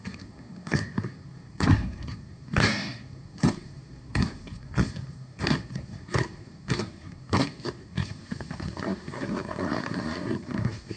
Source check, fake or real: fake